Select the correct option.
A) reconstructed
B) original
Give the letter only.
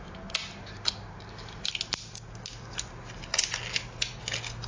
B